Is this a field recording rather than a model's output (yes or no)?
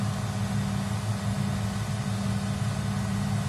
yes